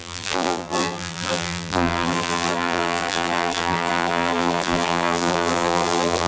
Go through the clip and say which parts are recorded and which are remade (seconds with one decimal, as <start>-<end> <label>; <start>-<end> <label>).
0.0-6.3 remade